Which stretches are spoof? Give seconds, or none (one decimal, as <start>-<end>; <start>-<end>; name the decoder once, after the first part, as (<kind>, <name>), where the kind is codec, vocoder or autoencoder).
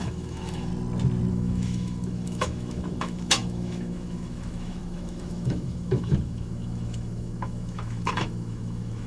0.0-0.7 (autoencoder, DAC-VAE); 1.3-9.1